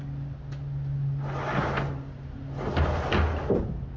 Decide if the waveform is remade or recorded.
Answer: recorded